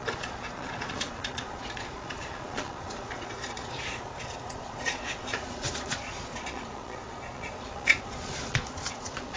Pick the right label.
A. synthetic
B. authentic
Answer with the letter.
A